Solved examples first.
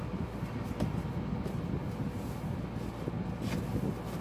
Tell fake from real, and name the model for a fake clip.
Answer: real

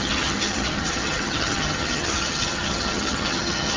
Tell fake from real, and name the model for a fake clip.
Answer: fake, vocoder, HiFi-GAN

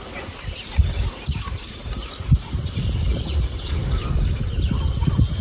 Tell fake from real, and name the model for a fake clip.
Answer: real